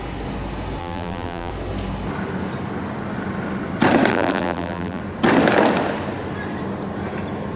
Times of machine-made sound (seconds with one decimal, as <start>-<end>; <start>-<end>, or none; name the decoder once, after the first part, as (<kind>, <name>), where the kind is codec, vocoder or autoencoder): 0.8-1.5 (vocoder, BigVGAN v2); 4.1-5.0